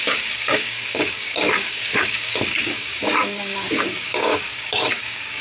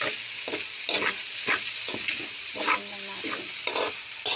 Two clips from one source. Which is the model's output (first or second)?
first